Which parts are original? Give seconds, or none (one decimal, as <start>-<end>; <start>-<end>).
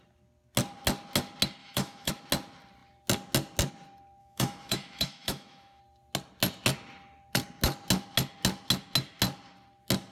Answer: 0.0-1.6; 2.1-4.2; 5.8-10.1